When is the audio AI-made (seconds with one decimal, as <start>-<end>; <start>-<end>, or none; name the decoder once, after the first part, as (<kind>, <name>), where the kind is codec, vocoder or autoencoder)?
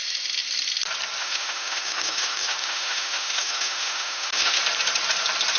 1.2-4.6 (autoencoder, DAC-VAE)